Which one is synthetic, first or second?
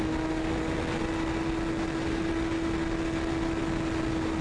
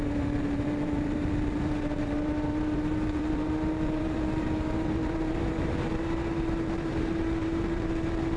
second